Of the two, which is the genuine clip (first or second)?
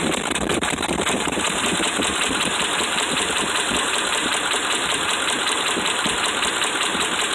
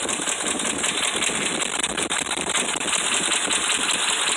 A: second